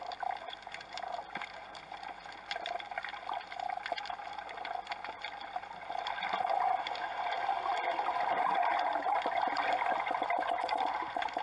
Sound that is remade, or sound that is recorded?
remade